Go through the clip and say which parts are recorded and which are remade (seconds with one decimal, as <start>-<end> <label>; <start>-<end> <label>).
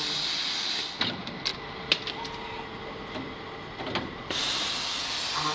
0.0-5.5 recorded